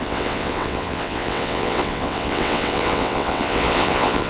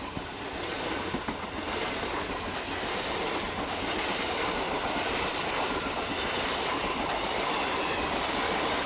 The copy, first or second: first